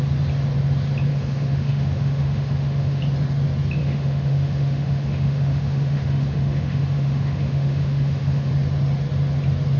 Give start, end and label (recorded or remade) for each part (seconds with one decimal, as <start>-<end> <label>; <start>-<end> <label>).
0.0-1.1 recorded; 1.1-3.0 remade; 3.0-3.8 recorded; 3.8-8.5 remade; 8.5-9.8 recorded